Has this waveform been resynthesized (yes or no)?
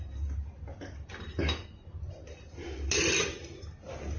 no